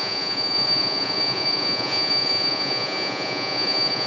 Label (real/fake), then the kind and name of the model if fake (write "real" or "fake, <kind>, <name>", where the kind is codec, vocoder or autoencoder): fake, vocoder, Vocos